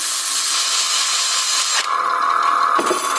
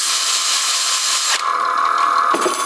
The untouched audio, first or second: first